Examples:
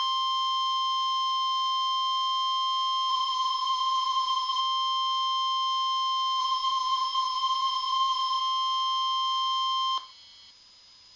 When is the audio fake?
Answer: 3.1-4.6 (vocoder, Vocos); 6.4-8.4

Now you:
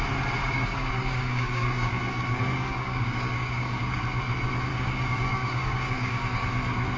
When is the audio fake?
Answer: 0.4-4.0 (codec, DAC); 4.7-6.5

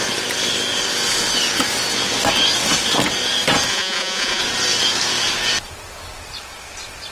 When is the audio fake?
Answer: 3.7-4.4 (vocoder, Vocos)

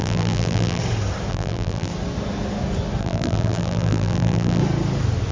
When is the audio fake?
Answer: 0.0-0.8 (vocoder, BigVGAN v2); 1.3-1.9; 3.0-4.6